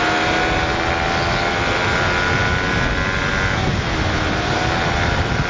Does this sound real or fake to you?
real